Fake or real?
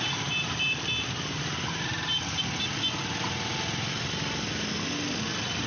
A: real